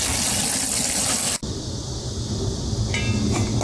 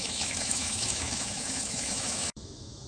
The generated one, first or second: second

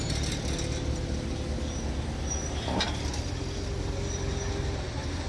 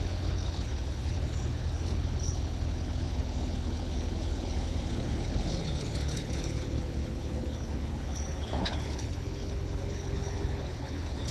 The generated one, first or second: second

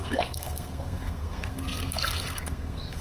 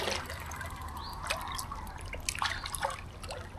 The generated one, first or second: first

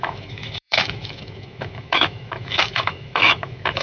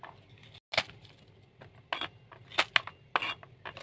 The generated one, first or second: first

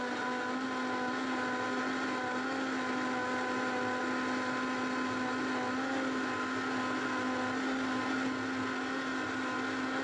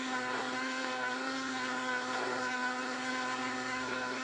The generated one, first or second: second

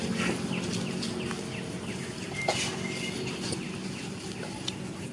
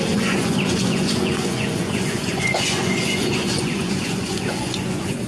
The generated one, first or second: second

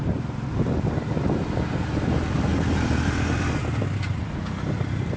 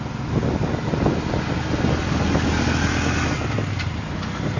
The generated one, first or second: first